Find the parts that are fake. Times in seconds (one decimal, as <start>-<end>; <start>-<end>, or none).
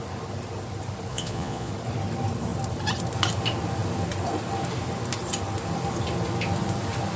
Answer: 1.1-1.7